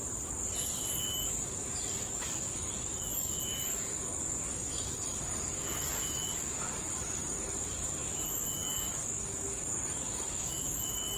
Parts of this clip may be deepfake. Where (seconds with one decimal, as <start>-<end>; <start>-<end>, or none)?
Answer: 1.0-11.2